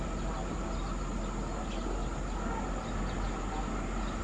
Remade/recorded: recorded